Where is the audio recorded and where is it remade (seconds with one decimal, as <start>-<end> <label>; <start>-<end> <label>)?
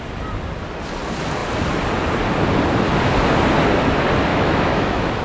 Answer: 0.0-4.3 recorded; 4.3-5.2 remade